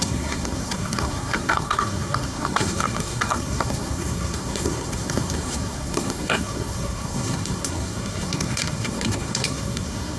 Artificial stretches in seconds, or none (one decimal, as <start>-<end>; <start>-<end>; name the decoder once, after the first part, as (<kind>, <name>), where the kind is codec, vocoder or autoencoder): 0.0-10.2 (codec, SNAC)